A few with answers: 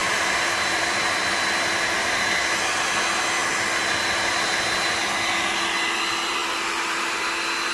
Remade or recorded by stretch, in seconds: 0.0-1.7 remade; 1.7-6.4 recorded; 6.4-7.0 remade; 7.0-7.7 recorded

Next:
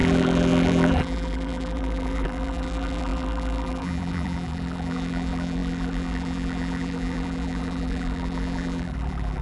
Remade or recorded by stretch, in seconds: 0.0-9.4 remade

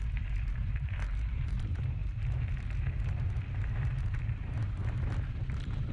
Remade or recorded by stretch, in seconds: 0.0-2.0 remade; 2.0-4.0 recorded; 4.0-4.8 remade; 4.8-5.4 recorded; 5.4-5.9 remade

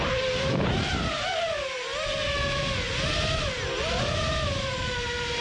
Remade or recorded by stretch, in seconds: 0.0-1.9 remade; 1.9-4.0 recorded; 4.0-5.4 remade

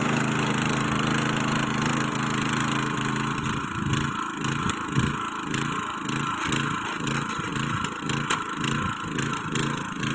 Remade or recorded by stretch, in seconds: 0.0-10.1 recorded

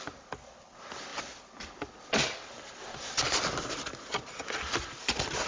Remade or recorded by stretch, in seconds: 0.0-5.5 recorded

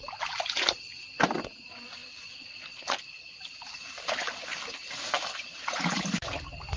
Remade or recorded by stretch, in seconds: 0.0-2.0 recorded; 2.0-3.6 remade; 3.6-5.4 recorded; 5.4-6.0 remade; 6.0-6.8 recorded

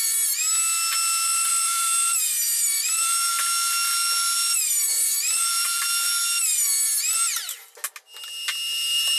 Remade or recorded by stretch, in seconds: 0.0-1.5 recorded; 1.5-3.3 remade; 3.3-4.4 recorded; 4.4-6.1 remade; 6.1-9.2 recorded